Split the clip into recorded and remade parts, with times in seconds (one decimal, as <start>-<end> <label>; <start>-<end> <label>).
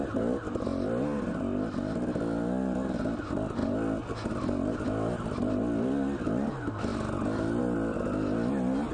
0.0-8.9 recorded